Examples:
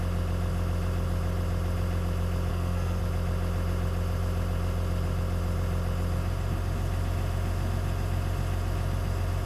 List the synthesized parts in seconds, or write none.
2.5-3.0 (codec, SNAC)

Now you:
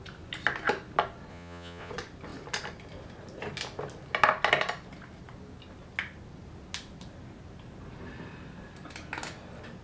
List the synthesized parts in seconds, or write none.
1.3-1.9 (vocoder, Vocos)